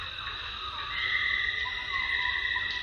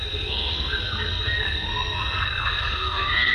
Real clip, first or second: first